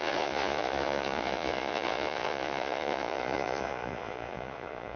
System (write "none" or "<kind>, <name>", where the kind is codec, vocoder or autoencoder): vocoder, Vocos